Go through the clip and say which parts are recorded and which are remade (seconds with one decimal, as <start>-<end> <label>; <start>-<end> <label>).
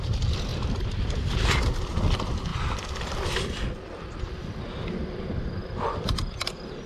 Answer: 0.0-0.5 recorded; 0.5-1.3 remade; 1.3-2.5 recorded; 2.5-4.4 remade; 4.4-6.9 recorded